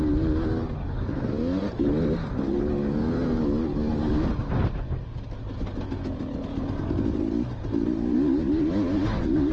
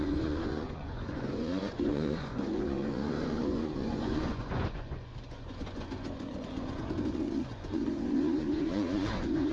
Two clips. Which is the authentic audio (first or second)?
first